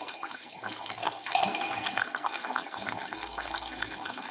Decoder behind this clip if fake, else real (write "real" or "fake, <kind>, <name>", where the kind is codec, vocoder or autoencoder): fake, codec, SNAC